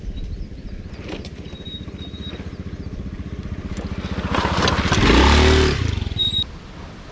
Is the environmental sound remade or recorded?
recorded